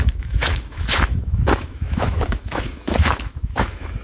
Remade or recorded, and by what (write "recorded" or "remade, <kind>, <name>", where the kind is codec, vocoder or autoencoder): remade, autoencoder, DAC-VAE